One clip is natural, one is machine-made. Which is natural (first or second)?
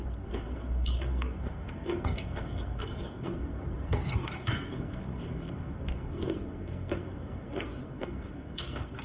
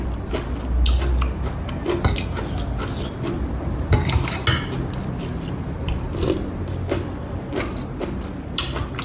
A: second